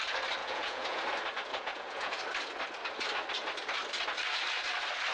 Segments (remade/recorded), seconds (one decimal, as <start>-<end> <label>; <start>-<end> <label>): 0.0-0.4 recorded; 0.4-1.0 remade; 1.0-1.5 recorded; 1.5-2.2 remade; 2.2-5.1 recorded